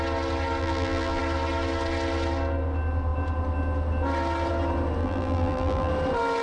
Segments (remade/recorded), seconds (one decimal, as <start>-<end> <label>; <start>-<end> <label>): 0.0-0.6 recorded; 0.6-1.2 remade; 1.2-5.0 recorded; 5.0-5.9 remade; 5.9-6.4 recorded